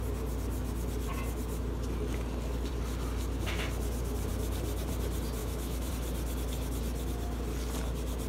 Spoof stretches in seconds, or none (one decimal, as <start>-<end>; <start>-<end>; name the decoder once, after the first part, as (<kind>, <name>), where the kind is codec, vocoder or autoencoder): 5.4-5.9 (autoencoder, DAC-VAE)